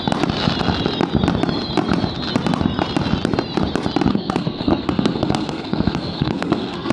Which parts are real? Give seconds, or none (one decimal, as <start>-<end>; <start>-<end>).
0.0-4.1